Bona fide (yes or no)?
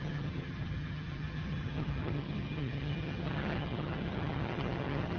no